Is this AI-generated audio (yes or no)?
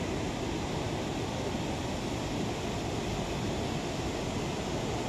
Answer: no